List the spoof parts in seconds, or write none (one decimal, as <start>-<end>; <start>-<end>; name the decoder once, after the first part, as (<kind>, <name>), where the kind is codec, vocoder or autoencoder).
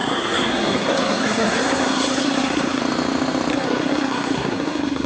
0.0-2.8 (codec, SNAC); 3.5-5.1